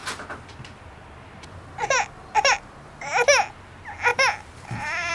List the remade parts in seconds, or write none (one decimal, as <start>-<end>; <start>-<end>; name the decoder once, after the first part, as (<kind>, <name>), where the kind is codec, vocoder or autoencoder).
0.0-3.1 (vocoder, BigVGAN v2); 4.1-5.1